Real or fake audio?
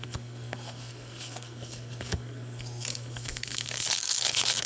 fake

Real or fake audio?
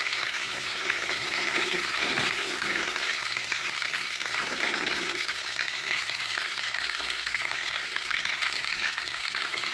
fake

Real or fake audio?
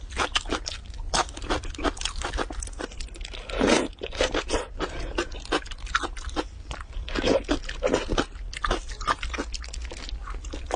real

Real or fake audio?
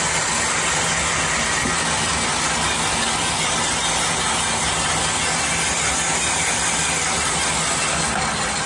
real